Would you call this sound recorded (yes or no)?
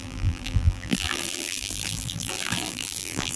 no